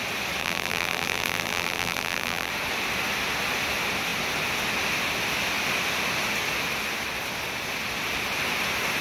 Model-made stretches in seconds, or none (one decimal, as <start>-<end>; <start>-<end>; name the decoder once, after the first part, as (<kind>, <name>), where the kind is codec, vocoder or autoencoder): 0.4-2.5 (vocoder, BigVGAN v2)